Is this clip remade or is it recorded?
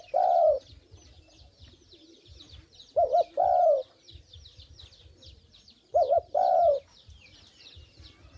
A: remade